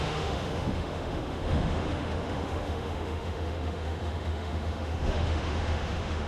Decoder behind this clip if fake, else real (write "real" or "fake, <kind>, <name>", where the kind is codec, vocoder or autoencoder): fake, autoencoder, DAC-VAE